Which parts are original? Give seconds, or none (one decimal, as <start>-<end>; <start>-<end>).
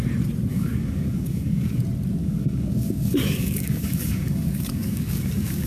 0.0-0.5; 1.8-2.2